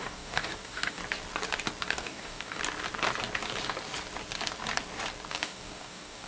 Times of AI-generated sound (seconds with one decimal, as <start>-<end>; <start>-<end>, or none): 0.0-1.0; 1.9-2.6; 5.3-6.3